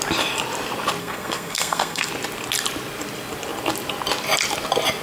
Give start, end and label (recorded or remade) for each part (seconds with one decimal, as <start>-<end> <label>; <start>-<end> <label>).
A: 0.0-1.0 recorded; 1.0-2.1 remade; 2.1-5.0 recorded